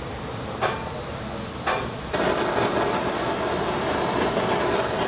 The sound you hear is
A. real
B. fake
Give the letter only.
A